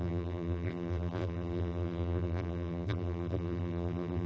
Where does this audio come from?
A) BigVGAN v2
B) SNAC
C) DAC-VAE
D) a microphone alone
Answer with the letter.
A